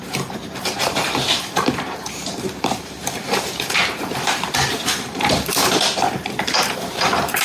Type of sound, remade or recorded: remade